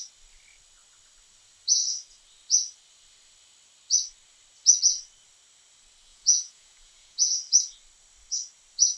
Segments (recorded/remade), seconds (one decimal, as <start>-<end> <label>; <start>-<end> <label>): 0.0-6.1 recorded; 6.1-7.3 remade; 7.3-9.0 recorded